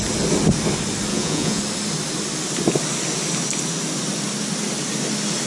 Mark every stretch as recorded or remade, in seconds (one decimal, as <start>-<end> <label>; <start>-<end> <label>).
0.0-1.1 recorded; 1.1-1.6 remade; 1.6-5.5 recorded